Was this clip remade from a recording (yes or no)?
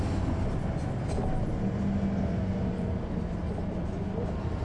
no